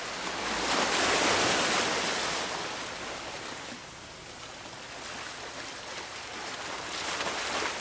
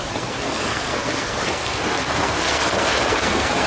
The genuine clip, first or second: first